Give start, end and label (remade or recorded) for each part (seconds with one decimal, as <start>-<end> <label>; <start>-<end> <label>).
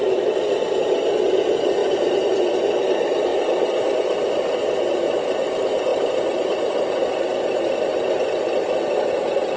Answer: 0.0-1.8 recorded; 1.8-2.4 remade; 2.4-5.9 recorded; 5.9-7.2 remade; 7.2-9.6 recorded